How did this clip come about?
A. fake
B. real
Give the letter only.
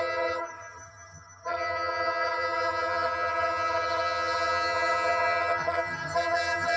A